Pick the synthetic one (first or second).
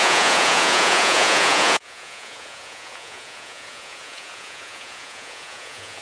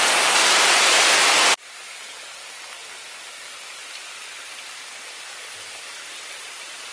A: first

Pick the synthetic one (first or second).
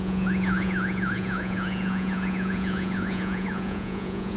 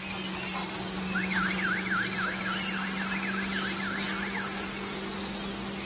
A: first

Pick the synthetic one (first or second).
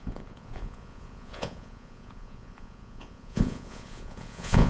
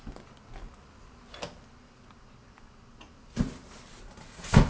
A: first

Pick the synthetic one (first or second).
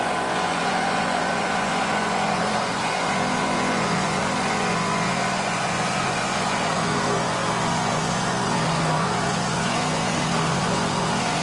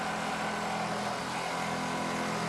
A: first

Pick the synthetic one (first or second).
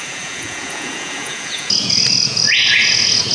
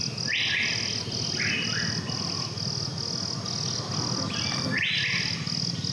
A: first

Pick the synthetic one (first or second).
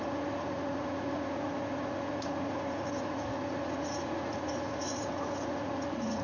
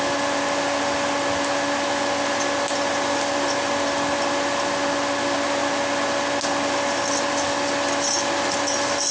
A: first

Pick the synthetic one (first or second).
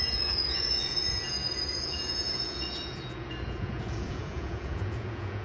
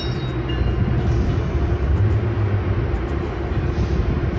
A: first